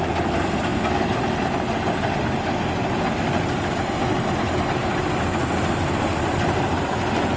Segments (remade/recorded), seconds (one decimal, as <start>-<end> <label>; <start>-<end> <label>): 0.0-7.4 recorded